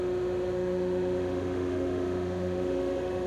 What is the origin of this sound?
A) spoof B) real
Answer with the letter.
A